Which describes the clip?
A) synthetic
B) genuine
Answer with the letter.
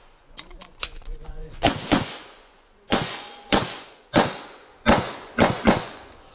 A